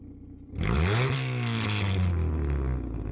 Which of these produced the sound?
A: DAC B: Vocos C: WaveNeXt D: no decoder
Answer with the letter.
D